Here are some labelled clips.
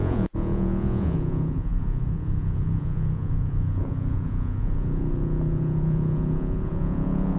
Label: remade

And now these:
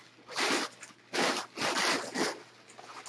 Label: recorded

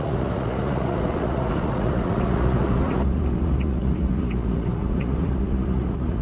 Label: remade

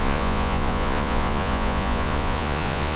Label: remade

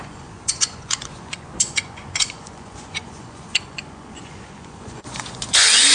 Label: remade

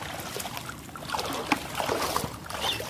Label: recorded